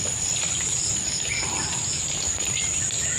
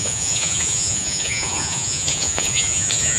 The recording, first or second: first